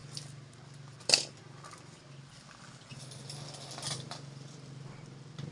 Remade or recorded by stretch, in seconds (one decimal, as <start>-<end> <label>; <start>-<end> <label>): 0.0-2.9 remade; 2.9-3.7 recorded; 3.7-5.5 remade